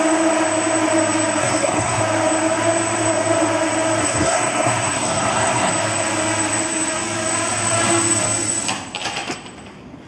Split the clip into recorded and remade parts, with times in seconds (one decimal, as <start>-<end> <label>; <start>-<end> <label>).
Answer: 0.0-1.4 recorded; 1.4-2.0 remade; 2.0-4.0 recorded; 4.0-5.7 remade; 5.7-10.1 recorded